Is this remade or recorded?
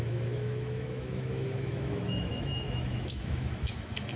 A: remade